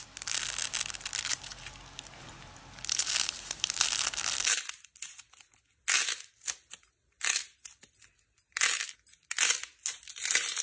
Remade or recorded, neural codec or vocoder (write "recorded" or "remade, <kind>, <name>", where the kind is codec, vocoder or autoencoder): recorded